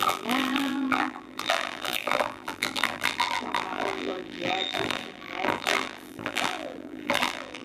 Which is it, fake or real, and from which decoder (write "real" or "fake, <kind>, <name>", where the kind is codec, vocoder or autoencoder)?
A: fake, vocoder, BigVGAN v2